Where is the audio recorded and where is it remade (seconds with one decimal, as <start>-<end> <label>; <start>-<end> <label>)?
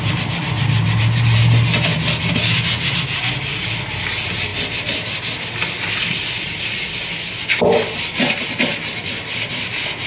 0.0-10.1 recorded